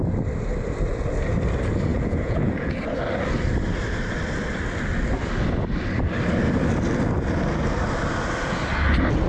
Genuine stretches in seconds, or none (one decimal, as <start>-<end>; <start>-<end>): 0.0-1.9; 2.8-9.3